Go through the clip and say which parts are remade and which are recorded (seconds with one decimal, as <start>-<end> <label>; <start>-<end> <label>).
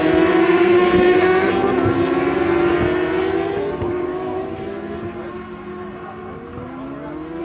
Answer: 0.0-0.4 recorded; 0.4-1.5 remade; 1.5-7.4 recorded